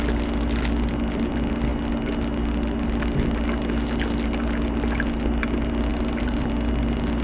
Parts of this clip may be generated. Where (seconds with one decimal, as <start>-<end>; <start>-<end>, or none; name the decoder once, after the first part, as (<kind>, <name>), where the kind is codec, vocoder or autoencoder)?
5.9-6.5 (vocoder, BigVGAN v2)